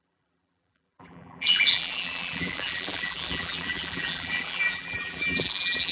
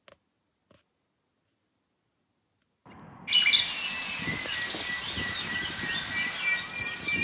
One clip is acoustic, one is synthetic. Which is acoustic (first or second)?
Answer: second